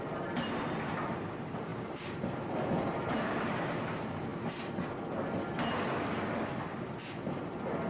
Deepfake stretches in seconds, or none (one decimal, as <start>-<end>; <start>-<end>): 0.0-4.3

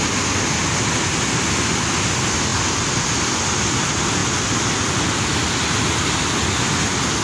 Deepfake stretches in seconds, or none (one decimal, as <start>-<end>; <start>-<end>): none